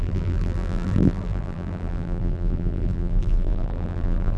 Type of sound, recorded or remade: remade